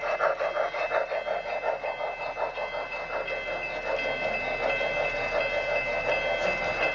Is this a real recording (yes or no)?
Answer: yes